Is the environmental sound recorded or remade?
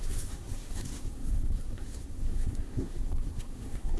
remade